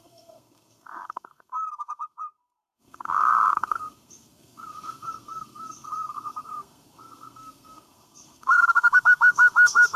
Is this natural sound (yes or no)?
no